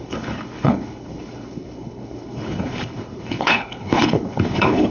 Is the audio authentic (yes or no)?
no